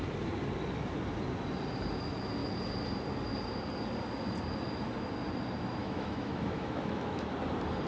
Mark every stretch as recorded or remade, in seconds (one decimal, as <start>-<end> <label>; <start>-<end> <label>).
0.0-5.8 recorded; 5.8-7.3 remade; 7.3-7.9 recorded